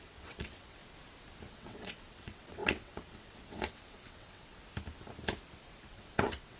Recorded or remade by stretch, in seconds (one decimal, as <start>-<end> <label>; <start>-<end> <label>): 0.0-0.8 remade; 0.8-1.5 recorded; 1.5-4.5 remade; 4.5-5.9 recorded; 5.9-6.6 remade